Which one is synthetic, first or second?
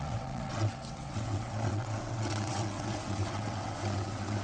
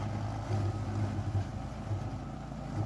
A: first